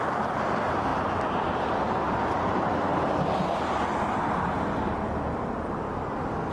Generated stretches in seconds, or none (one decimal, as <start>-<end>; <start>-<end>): none